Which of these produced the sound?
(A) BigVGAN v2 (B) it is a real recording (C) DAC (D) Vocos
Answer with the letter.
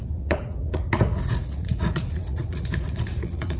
D